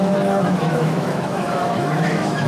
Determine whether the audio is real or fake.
fake